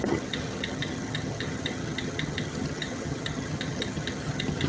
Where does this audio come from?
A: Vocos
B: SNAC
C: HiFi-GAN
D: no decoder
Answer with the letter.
C